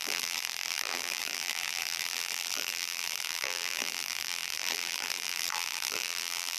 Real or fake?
fake